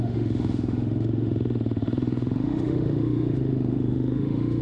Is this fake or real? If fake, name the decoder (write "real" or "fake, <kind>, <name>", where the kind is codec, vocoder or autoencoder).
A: fake, autoencoder, DAC-VAE